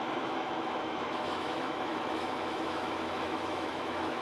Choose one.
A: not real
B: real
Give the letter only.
A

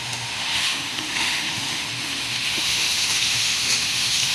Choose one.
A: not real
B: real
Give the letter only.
A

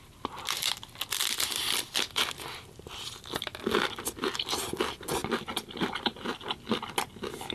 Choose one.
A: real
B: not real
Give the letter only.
A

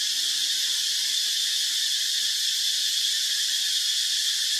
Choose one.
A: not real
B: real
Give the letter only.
B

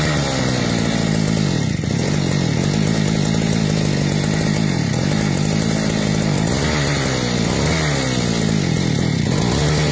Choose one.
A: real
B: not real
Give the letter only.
A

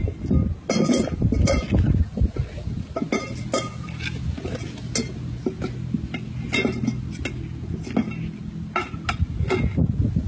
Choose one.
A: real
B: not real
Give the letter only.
A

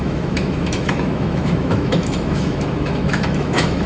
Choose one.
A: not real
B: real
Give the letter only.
A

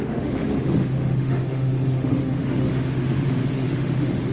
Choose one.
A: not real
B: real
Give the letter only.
A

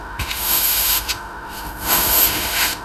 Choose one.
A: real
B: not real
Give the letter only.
B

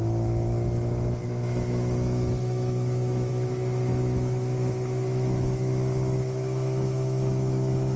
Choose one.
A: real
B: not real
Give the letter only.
B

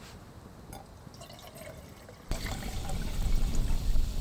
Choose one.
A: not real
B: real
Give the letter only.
B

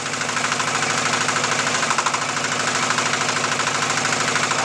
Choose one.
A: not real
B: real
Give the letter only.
B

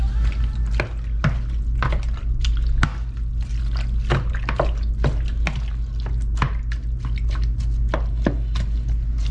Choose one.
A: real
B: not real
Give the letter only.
A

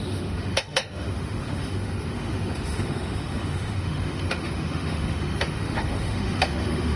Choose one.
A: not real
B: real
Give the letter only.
A